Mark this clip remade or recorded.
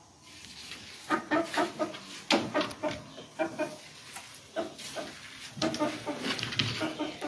recorded